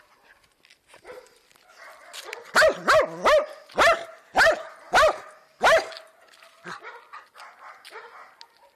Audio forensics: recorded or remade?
recorded